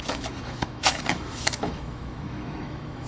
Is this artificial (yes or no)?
yes